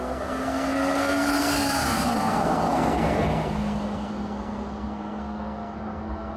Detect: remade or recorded remade